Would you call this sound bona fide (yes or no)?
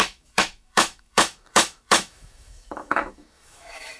no